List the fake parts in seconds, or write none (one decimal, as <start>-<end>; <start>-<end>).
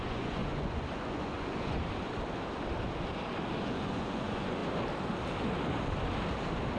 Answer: 0.0-1.8; 3.6-4.6